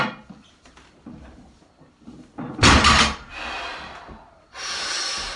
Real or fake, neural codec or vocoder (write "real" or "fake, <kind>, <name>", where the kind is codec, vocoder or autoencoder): real